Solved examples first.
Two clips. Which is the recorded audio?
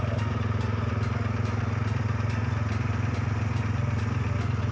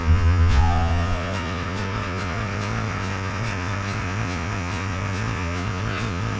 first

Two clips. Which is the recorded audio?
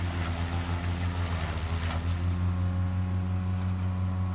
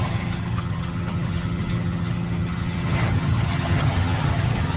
first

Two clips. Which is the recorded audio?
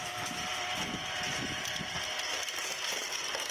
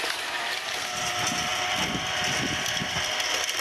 first